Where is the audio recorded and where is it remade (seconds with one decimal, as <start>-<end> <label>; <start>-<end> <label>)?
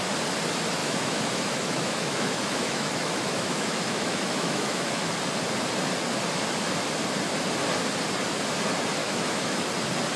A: 0.0-0.8 recorded; 0.8-5.1 remade; 5.1-9.0 recorded; 9.0-9.7 remade; 9.7-10.2 recorded